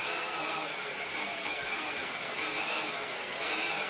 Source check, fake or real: fake